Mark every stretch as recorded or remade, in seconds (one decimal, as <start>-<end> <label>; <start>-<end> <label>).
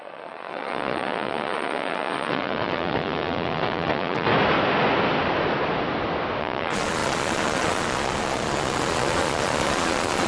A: 0.0-4.3 remade; 4.3-6.4 recorded; 6.4-10.3 remade